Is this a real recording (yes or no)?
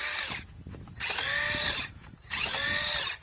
no